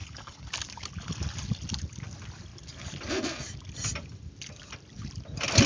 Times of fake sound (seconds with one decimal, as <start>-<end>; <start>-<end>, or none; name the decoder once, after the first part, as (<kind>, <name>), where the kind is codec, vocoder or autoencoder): 0.0-0.5 (codec, HILCodec)